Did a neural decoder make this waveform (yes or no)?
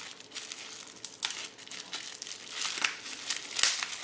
no